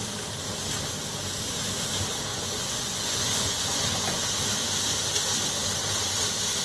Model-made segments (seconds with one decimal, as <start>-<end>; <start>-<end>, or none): 2.3-4.2

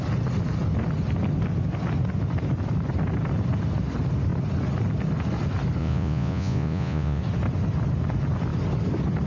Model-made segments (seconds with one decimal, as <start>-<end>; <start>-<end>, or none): 5.8-7.2

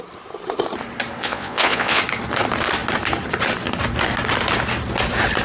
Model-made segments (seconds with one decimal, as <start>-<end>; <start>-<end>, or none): 1.2-2.0

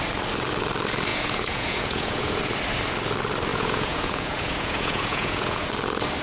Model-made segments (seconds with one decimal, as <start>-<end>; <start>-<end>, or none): 1.1-2.4; 3.5-5.7